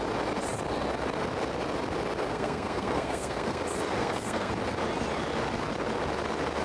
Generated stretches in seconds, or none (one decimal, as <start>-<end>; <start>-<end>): 2.3-3.6; 4.0-4.5